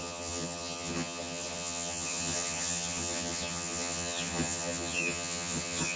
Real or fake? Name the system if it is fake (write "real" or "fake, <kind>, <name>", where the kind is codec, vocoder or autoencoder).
fake, vocoder, HiFi-GAN